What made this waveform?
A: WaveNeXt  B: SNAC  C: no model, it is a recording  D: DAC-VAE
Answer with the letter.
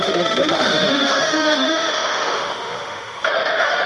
D